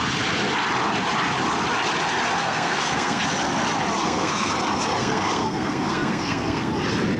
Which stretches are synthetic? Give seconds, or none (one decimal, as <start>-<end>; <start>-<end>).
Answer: 2.4-3.2; 4.0-4.5; 5.0-6.7